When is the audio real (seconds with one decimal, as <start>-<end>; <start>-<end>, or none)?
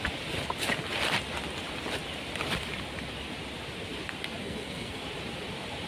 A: 0.0-4.4; 5.0-5.9